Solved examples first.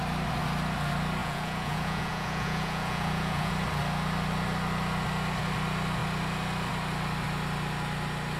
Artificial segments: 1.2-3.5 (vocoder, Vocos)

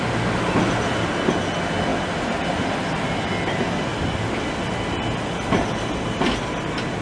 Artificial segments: none

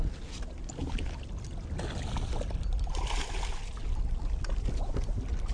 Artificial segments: none

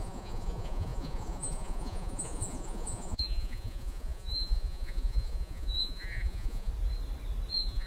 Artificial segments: 0.0-6.7 (vocoder, Vocos); 7.5-7.9

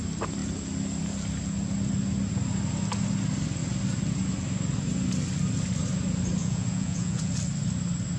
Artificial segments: 6.4-7.3 (vocoder, Vocos)

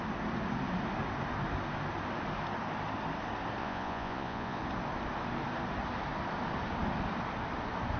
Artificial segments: 3.6-4.6 (vocoder, Vocos)

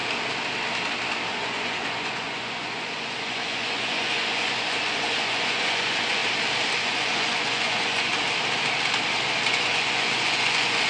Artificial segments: 1.3-6.2 (vocoder, Vocos); 6.8-8.1; 9.5-10.9

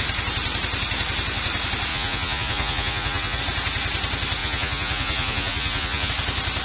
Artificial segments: 1.9-3.4 (vocoder, Vocos); 4.4-6.1